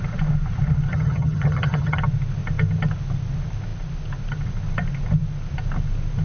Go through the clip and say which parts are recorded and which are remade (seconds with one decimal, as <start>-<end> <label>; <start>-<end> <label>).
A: 0.0-0.9 recorded; 0.9-2.0 remade; 2.0-6.2 recorded